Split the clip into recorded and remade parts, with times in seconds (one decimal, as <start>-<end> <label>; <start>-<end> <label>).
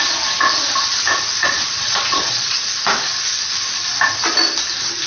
0.0-1.4 recorded; 1.4-2.6 remade; 2.6-5.1 recorded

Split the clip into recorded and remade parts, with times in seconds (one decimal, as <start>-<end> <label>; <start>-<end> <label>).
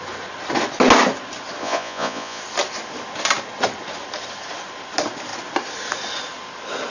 0.0-1.6 recorded; 1.6-2.4 remade; 2.4-6.9 recorded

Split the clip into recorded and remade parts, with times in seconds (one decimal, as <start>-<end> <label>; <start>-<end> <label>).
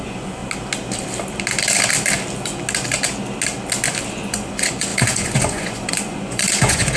0.0-0.4 remade; 0.4-4.1 recorded; 4.1-7.0 remade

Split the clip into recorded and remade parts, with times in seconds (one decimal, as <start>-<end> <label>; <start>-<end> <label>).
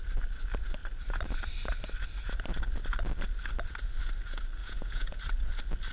0.0-4.6 recorded; 4.6-5.2 remade; 5.2-5.9 recorded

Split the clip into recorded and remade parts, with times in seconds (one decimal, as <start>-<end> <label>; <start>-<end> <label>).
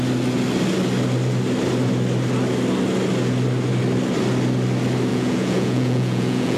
0.0-5.1 recorded; 5.1-6.6 remade